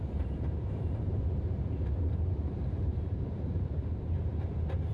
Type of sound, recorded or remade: remade